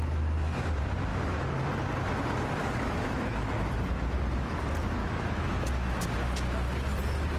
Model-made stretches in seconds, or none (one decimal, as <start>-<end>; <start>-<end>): 1.1-1.7; 2.6-3.7; 5.0-5.7